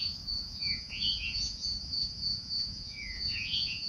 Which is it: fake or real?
fake